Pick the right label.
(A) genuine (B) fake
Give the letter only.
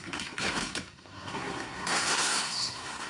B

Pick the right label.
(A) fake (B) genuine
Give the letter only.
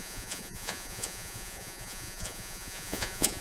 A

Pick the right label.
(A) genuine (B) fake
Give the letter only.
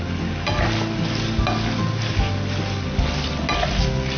A